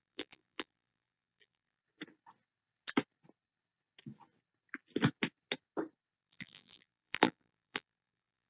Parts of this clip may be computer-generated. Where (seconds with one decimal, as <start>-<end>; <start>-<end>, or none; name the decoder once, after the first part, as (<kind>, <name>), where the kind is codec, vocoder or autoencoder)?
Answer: 0.0-1.8 (vocoder, BigVGAN v2); 6.2-8.5